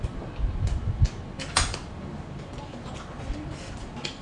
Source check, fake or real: real